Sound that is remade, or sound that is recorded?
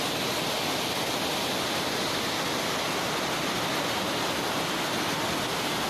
recorded